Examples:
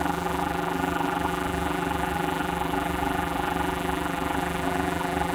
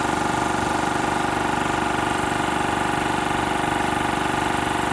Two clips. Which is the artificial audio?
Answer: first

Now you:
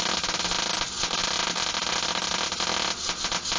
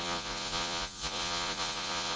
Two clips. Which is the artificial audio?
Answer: second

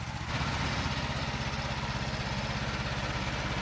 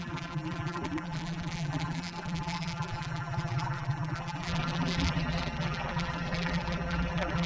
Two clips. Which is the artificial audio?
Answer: second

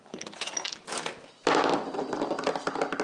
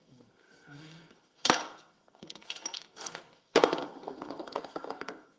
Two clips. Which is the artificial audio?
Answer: second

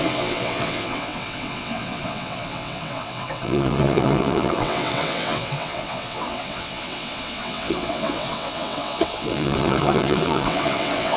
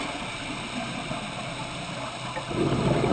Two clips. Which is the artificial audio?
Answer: first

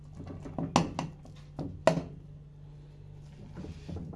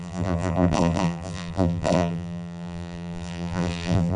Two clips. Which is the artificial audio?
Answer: second